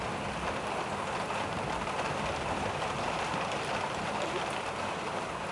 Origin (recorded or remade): recorded